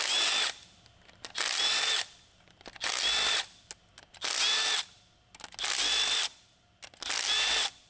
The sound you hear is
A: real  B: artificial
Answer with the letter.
A